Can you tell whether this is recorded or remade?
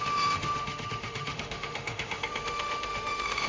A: remade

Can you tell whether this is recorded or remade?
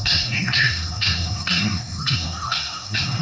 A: remade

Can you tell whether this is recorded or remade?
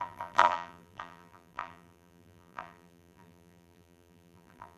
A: remade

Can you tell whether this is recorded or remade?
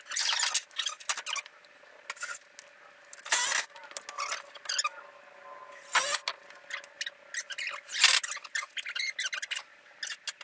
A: recorded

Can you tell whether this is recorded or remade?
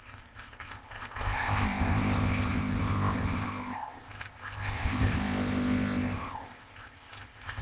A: remade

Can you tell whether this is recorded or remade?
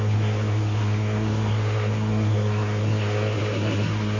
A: remade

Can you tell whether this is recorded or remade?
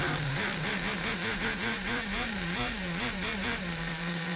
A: remade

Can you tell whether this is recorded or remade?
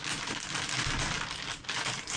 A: recorded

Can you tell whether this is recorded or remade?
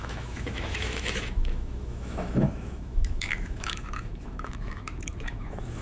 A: remade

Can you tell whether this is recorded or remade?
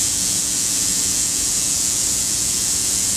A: remade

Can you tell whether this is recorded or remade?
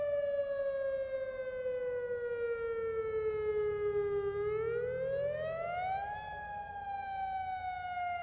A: recorded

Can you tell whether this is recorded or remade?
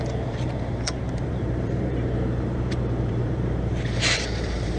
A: remade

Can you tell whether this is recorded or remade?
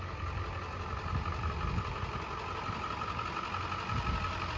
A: recorded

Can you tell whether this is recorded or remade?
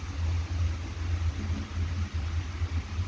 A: recorded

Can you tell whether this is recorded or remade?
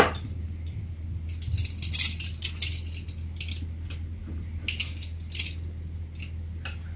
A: recorded